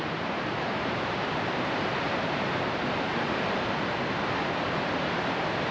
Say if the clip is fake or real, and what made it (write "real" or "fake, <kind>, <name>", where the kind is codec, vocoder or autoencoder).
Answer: fake, vocoder, BigVGAN v2